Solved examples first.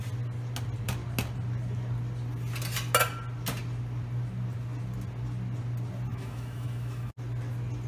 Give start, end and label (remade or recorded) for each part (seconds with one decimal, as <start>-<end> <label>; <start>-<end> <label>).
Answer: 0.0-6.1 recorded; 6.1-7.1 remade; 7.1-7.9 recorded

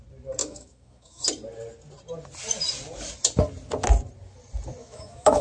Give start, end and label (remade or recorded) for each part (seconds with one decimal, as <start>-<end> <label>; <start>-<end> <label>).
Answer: 0.0-0.4 recorded; 0.4-1.2 remade; 1.2-4.8 recorded; 4.8-5.4 remade

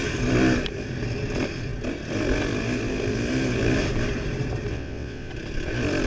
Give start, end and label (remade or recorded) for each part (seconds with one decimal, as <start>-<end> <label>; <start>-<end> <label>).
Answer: 0.0-4.7 recorded; 4.7-5.3 remade; 5.3-6.1 recorded